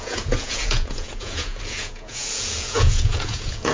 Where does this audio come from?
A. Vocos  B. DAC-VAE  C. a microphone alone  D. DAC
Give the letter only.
A